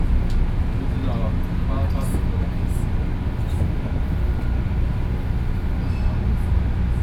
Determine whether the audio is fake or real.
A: real